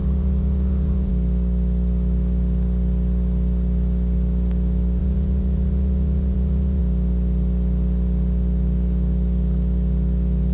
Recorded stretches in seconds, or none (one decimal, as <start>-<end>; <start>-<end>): 1.1-5.0; 6.8-10.5